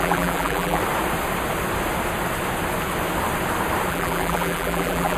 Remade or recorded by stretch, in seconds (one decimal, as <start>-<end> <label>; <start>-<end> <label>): 0.0-0.8 remade; 0.8-3.9 recorded; 3.9-5.2 remade